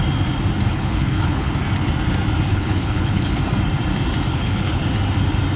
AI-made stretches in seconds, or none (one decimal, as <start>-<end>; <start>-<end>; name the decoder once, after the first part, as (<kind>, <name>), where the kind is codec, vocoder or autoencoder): 0.7-1.5 (codec, HILCodec); 2.5-3.4; 4.3-4.8